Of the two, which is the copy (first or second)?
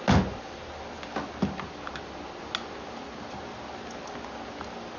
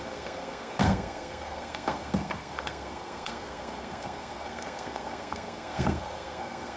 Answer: second